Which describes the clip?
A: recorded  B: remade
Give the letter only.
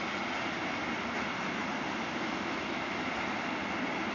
A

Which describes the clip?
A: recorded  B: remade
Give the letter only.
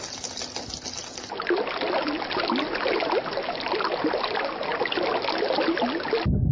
A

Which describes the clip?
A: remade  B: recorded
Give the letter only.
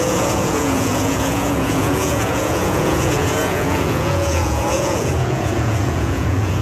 A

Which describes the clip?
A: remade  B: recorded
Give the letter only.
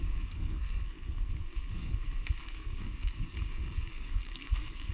A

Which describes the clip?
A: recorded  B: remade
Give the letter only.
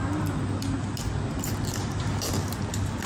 A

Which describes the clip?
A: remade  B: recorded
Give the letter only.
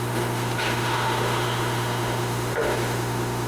A